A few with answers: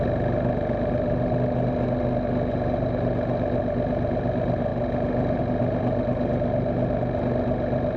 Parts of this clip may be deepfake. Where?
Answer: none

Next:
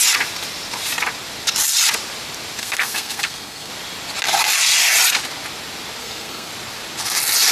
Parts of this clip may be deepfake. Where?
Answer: 2.6-3.7; 6.0-6.5

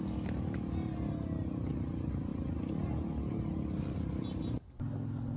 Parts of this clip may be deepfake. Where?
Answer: none

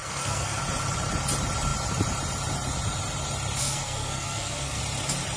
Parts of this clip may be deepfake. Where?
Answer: 0.0-0.6; 3.6-4.8

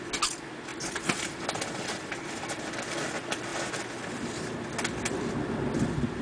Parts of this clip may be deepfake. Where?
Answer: 0.7-2.7

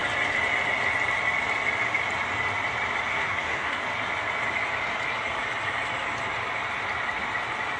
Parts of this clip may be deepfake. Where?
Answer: 3.1-3.8

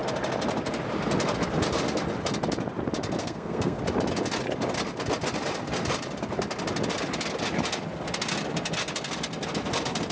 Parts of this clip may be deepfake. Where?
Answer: 3.2-3.8

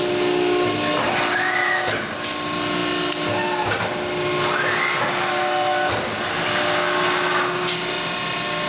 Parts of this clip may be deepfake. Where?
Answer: none